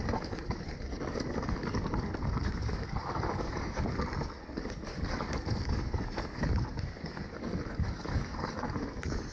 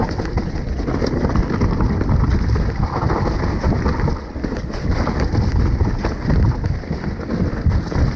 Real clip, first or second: second